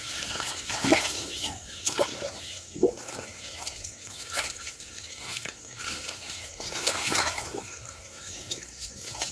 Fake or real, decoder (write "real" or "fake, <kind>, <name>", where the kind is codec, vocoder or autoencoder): fake, codec, SNAC